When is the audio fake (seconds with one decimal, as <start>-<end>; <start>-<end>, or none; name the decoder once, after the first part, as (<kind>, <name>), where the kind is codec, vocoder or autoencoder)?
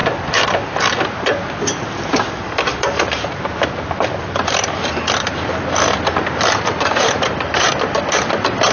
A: 0.0-2.0 (vocoder, BigVGAN v2); 2.7-7.5